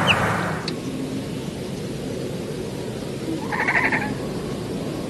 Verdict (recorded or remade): recorded